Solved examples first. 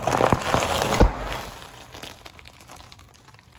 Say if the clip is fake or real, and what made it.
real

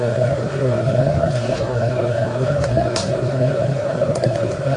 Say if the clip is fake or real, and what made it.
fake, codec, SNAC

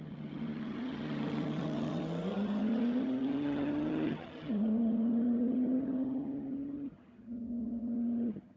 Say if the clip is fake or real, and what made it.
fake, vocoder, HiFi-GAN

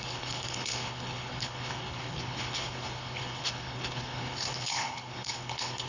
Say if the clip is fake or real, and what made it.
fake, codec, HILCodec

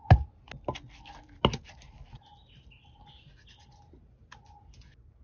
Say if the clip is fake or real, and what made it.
real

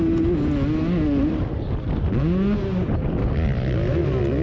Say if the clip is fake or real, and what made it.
real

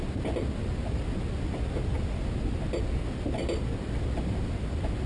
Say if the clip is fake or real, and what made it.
real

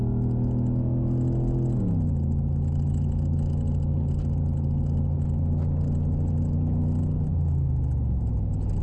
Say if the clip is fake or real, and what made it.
real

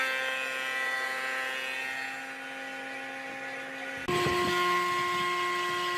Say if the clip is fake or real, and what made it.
real